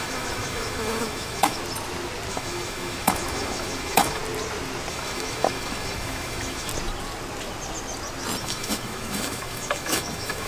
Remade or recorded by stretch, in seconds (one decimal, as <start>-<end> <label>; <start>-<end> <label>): 0.0-1.6 remade; 1.6-2.3 recorded; 2.3-4.2 remade; 4.2-4.9 recorded; 4.9-6.7 remade; 6.7-8.4 recorded; 8.4-10.5 remade